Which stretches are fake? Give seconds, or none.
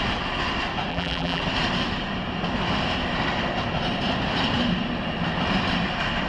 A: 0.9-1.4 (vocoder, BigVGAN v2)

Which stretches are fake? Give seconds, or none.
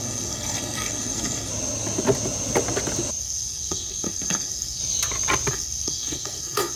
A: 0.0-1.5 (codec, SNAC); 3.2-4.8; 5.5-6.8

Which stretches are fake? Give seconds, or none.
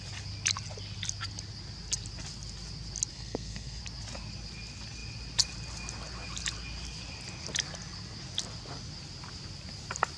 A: 3.1-3.8 (codec, SNAC)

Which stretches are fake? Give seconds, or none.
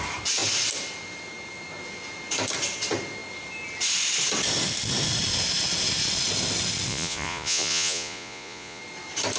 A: 6.9-8.8 (vocoder, Vocos)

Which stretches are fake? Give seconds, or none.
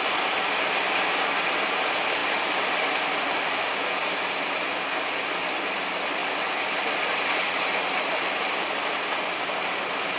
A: none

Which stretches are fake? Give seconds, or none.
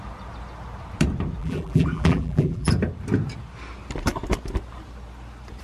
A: 1.4-2.7 (vocoder, BigVGAN v2)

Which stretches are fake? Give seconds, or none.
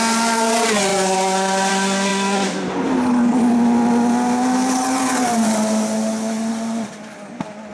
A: none